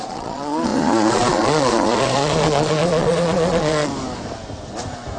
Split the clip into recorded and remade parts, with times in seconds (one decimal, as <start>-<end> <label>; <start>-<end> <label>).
0.0-3.9 remade; 3.9-5.2 recorded